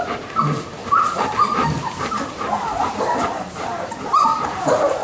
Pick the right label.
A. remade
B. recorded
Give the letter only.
A